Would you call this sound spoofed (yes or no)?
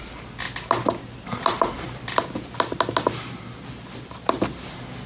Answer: no